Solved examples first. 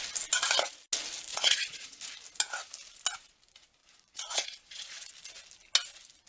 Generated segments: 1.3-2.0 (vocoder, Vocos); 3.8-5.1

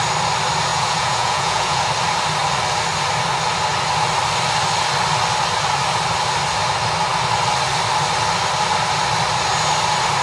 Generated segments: 0.7-1.9 (vocoder, Vocos)

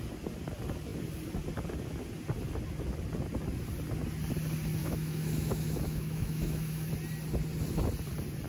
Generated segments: 4.8-6.9 (autoencoder, DAC-VAE)

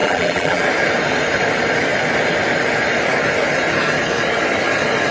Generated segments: 0.0-0.6 (vocoder, BigVGAN v2)

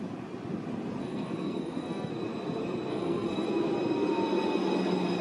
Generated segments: 1.0-2.1 (codec, SNAC); 2.9-3.5